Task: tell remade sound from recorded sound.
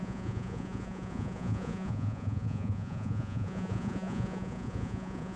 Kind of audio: remade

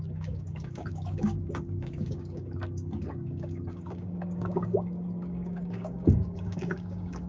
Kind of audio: remade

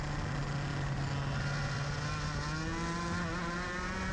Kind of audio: recorded